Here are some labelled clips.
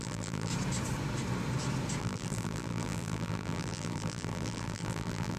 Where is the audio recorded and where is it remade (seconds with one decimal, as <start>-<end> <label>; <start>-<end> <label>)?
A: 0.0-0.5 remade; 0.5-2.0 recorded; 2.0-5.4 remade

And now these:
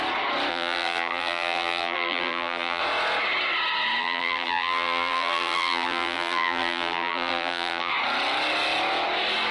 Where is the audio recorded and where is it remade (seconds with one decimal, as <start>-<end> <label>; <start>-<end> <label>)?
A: 0.0-0.5 recorded; 0.5-2.8 remade; 2.8-4.0 recorded; 4.0-7.9 remade; 7.9-9.5 recorded

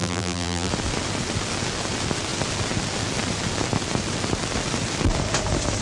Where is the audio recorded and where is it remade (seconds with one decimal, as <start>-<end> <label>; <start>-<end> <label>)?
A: 0.0-0.7 remade; 0.7-5.8 recorded

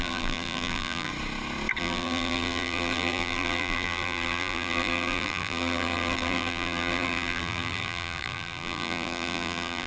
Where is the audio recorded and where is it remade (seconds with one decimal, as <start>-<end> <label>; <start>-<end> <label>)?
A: 0.0-1.1 remade; 1.1-1.8 recorded; 1.8-9.9 remade